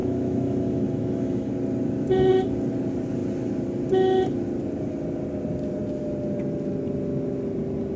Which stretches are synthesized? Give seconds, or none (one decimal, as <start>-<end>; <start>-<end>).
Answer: 0.0-1.5